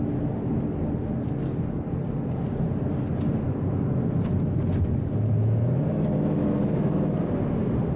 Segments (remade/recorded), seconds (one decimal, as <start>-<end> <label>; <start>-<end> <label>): 0.0-6.4 recorded; 6.4-7.4 remade; 7.4-8.0 recorded